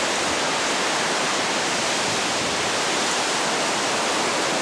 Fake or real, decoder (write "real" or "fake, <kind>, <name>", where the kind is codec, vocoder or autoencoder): real